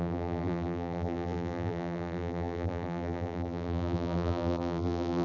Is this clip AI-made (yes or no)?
yes